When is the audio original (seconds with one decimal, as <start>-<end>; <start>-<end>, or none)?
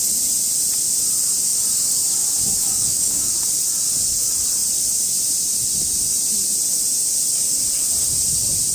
0.0-2.6; 3.3-8.7